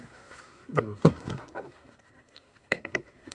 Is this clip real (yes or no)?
no